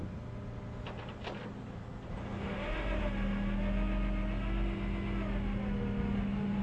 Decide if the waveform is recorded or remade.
recorded